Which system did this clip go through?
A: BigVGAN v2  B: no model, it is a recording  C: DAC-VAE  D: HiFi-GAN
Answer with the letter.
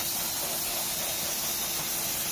B